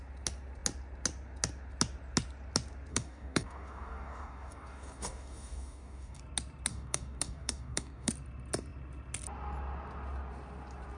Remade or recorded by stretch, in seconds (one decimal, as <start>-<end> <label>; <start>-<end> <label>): 0.0-2.9 recorded; 2.9-6.2 remade; 6.2-6.7 recorded; 6.7-8.1 remade; 8.1-11.0 recorded